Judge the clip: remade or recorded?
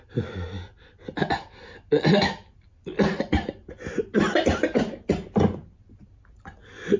recorded